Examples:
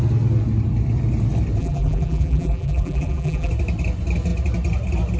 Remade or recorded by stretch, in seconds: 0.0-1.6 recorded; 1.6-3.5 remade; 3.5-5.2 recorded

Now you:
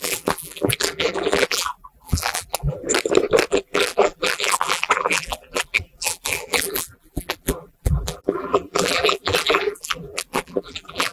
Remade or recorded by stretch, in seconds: 0.0-2.8 remade; 2.8-3.5 recorded; 3.5-11.1 remade

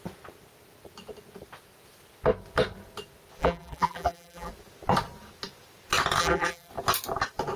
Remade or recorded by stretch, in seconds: 0.0-3.4 recorded; 3.4-4.5 remade; 4.5-6.2 recorded; 6.2-6.7 remade; 6.7-7.6 recorded

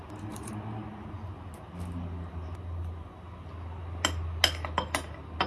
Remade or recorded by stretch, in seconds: 0.0-0.5 remade; 0.5-5.5 recorded

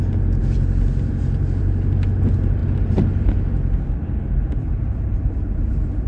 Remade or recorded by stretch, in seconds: 0.0-6.1 recorded

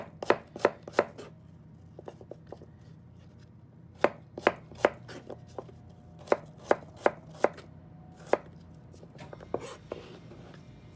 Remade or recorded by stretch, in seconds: 0.0-11.0 recorded

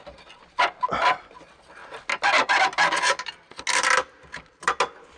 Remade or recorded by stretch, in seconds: 0.0-5.2 recorded